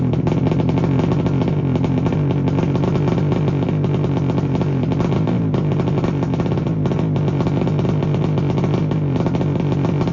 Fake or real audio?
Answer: real